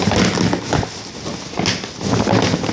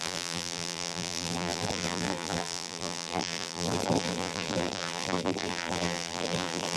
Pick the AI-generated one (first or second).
second